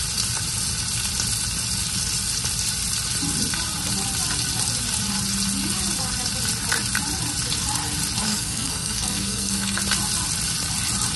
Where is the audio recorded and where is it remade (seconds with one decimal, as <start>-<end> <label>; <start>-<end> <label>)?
0.0-8.3 recorded; 8.3-9.8 remade; 9.8-11.2 recorded